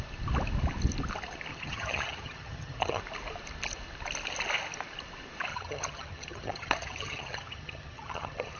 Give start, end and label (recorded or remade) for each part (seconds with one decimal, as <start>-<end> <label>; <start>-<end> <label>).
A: 0.0-1.5 recorded; 1.5-3.0 remade; 3.0-5.5 recorded; 5.5-8.6 remade